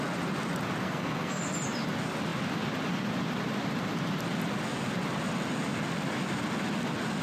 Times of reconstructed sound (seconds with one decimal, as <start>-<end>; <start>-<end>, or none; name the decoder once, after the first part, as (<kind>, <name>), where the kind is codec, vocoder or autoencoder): 0.8-1.4 (codec, SNAC)